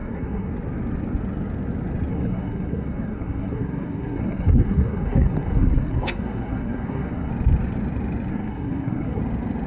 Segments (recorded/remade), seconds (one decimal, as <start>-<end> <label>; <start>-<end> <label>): 0.0-0.5 remade; 0.5-2.1 recorded; 2.1-7.3 remade; 7.3-8.3 recorded; 8.3-9.2 remade; 9.2-9.7 recorded